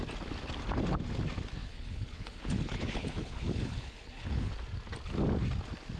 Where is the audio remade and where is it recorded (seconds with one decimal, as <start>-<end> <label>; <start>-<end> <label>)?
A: 0.0-1.6 recorded; 1.6-4.5 remade; 4.5-6.0 recorded